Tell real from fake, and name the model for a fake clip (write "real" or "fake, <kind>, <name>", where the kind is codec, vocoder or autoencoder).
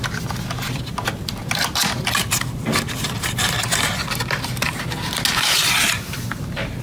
real